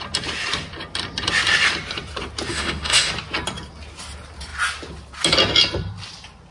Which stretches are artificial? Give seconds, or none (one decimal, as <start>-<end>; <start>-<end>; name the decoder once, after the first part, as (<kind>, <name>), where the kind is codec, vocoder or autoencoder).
2.5-3.1 (autoencoder, DAC-VAE)

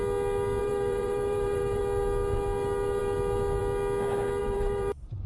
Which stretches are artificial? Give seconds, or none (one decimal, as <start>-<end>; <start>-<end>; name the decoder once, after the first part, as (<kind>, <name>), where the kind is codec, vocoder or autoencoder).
0.6-1.8 (vocoder, BigVGAN v2); 4.4-5.3